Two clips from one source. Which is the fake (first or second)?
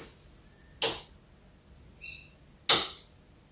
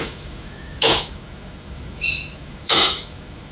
second